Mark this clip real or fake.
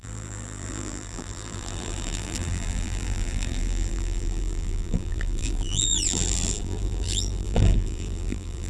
fake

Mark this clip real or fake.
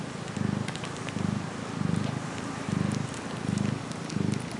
real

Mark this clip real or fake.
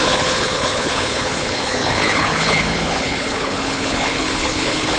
fake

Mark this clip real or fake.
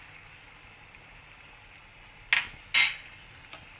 real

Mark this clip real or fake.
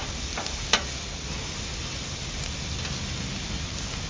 real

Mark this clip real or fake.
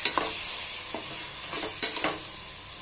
real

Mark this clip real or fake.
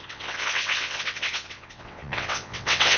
fake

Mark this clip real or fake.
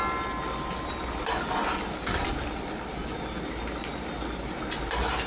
real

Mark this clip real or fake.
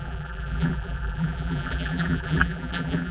fake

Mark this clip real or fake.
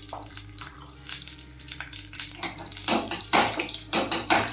fake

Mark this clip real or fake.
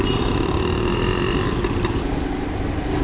real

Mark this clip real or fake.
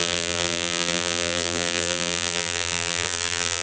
fake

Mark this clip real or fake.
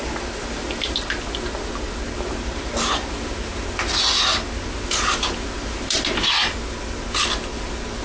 real